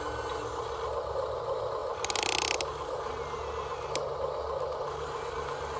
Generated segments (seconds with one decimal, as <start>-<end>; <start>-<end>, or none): none